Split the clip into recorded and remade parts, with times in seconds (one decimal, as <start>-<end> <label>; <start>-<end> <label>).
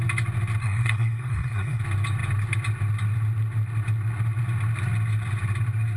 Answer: 0.0-0.6 recorded; 0.6-1.8 remade; 1.8-6.0 recorded